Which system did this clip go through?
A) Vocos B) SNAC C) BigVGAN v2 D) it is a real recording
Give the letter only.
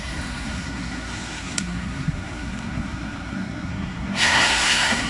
B